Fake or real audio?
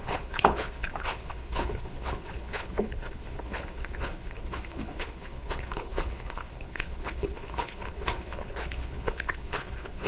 fake